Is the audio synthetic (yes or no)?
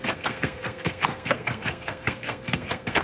yes